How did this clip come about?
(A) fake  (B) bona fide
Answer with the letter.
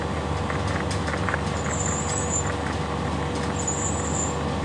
B